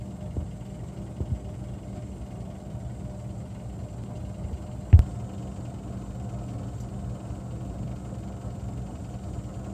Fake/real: real